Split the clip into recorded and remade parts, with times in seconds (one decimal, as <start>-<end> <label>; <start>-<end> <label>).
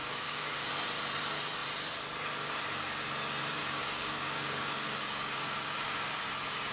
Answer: 0.0-0.7 remade; 0.7-3.6 recorded; 3.6-6.2 remade; 6.2-6.7 recorded